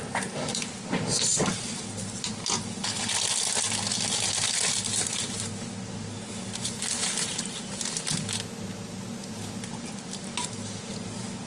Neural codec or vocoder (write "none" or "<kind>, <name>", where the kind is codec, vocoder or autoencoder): none